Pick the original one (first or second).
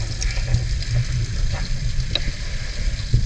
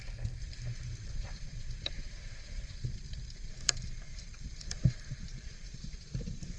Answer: first